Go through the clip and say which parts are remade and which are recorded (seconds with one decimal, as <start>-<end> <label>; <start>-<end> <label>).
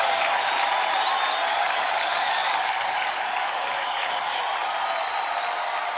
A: 0.0-0.5 remade; 0.5-1.5 recorded; 1.5-4.4 remade; 4.4-6.0 recorded